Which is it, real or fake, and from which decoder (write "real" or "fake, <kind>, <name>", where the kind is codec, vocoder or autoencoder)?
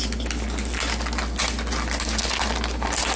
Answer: real